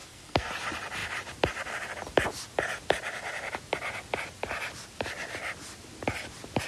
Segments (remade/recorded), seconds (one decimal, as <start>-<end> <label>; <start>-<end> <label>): 0.0-0.5 remade; 0.5-6.7 recorded